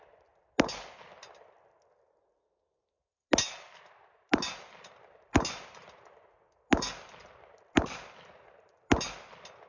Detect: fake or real real